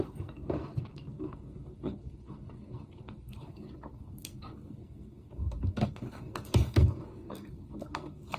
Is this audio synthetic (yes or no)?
yes